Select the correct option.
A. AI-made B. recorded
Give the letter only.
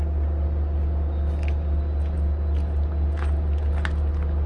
B